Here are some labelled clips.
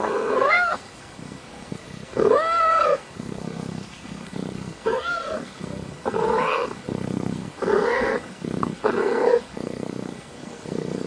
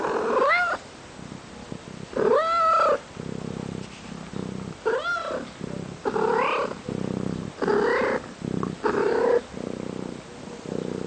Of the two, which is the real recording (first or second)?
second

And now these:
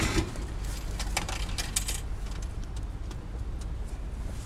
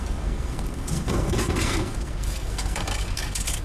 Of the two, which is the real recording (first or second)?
first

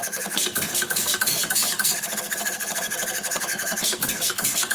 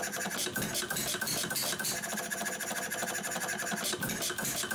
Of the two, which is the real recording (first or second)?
second